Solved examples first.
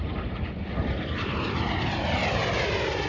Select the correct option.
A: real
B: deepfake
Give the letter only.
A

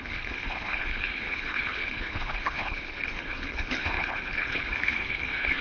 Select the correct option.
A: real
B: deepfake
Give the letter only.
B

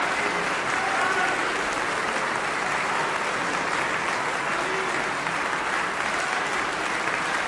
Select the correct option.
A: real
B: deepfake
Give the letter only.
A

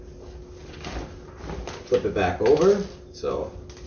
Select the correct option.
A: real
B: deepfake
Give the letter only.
A